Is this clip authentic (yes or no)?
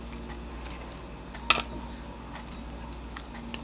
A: yes